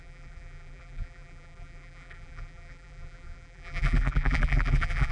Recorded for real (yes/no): no